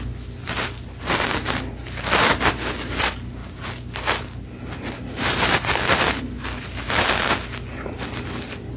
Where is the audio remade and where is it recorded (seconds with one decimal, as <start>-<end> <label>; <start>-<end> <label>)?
0.0-8.8 recorded